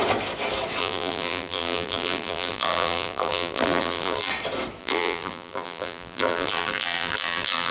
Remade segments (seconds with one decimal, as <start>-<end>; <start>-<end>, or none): 0.8-4.3; 4.8-7.7